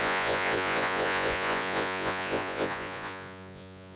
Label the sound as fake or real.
fake